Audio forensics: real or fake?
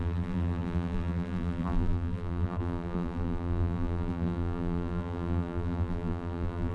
fake